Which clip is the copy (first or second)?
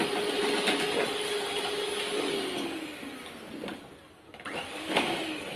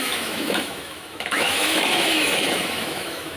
second